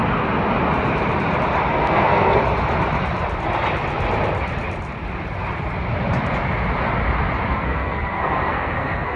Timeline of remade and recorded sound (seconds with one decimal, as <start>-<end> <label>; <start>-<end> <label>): 0.0-1.7 recorded; 1.7-2.4 remade; 2.4-7.5 recorded; 7.5-9.2 remade